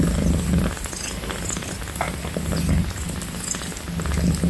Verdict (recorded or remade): recorded